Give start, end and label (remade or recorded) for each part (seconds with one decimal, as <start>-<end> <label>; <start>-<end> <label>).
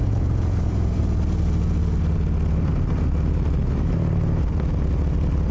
0.0-1.0 remade; 1.0-5.5 recorded